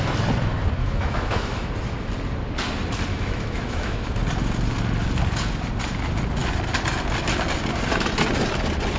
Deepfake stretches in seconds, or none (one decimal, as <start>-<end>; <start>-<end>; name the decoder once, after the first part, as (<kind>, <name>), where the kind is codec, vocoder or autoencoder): 0.8-1.7 (autoencoder, DAC-VAE); 3.1-4.1